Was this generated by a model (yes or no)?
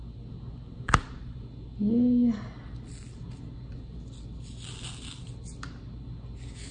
no